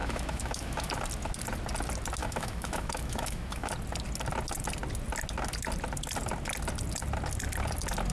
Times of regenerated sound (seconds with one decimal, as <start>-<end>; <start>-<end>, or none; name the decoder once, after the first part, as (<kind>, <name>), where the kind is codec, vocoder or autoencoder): 0.0-0.9 (autoencoder, DAC-VAE); 2.2-3.7